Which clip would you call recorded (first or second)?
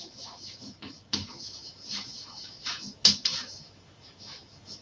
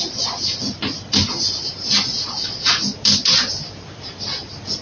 second